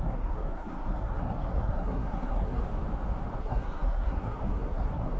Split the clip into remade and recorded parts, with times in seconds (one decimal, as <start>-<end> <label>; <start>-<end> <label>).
0.0-2.6 remade; 2.6-3.4 recorded; 3.4-5.2 remade

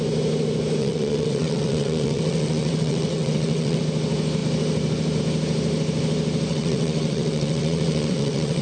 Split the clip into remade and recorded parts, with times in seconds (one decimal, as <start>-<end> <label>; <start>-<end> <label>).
0.0-0.8 recorded; 0.8-3.8 remade; 3.8-6.5 recorded; 6.5-8.6 remade

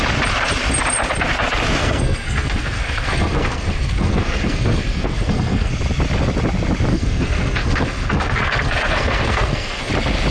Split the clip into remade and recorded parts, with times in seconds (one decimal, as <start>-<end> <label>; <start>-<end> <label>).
0.0-1.8 recorded; 1.8-5.7 remade; 5.7-6.9 recorded; 6.9-9.9 remade; 9.9-10.3 recorded